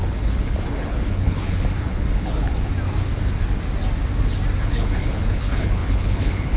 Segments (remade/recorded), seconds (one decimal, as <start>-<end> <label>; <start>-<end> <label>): 0.0-2.7 remade; 2.7-4.6 recorded; 4.6-6.6 remade